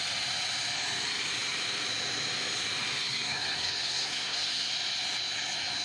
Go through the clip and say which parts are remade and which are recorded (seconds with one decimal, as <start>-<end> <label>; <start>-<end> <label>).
0.0-3.1 recorded; 3.1-4.7 remade; 4.7-5.8 recorded